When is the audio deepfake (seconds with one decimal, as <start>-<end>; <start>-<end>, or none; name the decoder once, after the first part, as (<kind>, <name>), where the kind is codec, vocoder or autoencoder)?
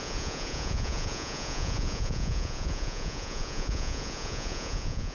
0.0-5.1 (vocoder, Vocos)